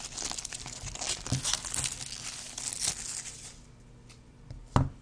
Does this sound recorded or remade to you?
recorded